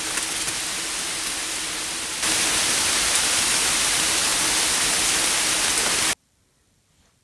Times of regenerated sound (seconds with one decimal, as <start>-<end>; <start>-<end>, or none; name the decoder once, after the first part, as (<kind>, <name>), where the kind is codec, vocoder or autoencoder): none